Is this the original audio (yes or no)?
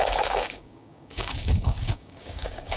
no